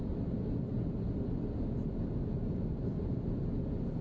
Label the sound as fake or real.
real